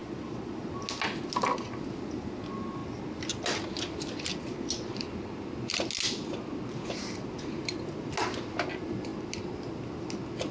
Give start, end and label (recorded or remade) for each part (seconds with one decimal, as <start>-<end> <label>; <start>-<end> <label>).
0.0-0.6 remade; 0.6-10.5 recorded

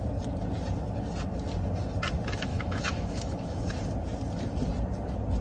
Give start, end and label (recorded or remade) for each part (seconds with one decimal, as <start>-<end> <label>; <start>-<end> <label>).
0.0-2.5 recorded; 2.5-3.7 remade; 3.7-5.4 recorded

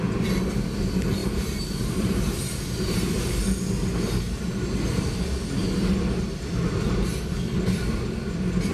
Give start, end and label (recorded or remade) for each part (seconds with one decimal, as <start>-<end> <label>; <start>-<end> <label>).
0.0-1.2 recorded; 1.2-5.2 remade; 5.2-8.7 recorded